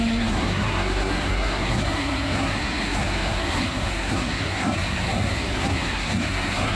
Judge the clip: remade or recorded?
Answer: remade